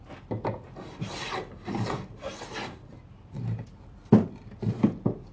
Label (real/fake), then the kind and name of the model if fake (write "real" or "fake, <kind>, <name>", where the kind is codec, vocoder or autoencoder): real